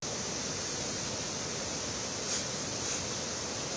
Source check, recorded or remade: recorded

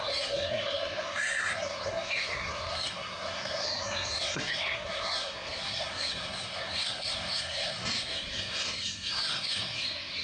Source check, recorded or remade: remade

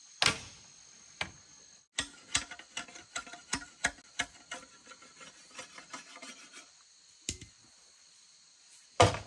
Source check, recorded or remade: recorded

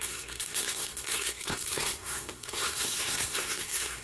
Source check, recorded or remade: remade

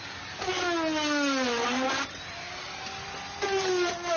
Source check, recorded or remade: recorded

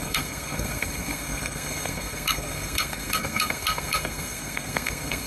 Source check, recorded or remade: remade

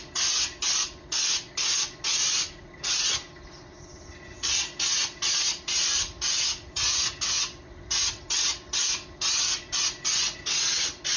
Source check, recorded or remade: recorded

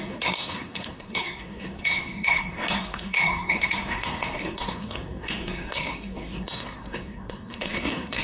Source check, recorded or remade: remade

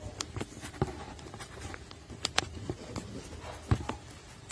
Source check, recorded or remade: recorded